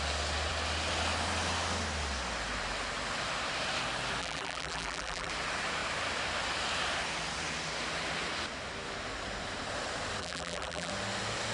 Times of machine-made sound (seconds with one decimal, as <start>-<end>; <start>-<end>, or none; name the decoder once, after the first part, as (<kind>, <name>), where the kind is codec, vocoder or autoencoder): 4.2-5.3 (vocoder, BigVGAN v2); 10.2-10.9